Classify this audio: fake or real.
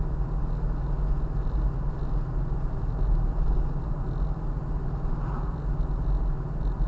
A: real